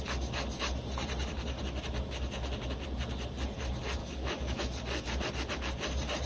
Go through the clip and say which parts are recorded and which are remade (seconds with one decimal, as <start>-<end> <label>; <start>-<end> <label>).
0.0-4.0 recorded; 4.0-4.6 remade; 4.6-6.3 recorded